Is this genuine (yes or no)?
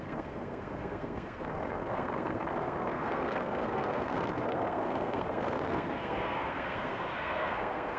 no